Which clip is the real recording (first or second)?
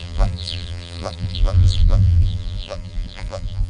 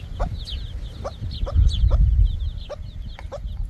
second